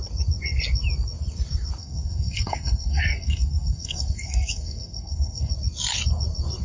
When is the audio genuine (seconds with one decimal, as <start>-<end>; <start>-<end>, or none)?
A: 0.0-1.8; 5.5-6.6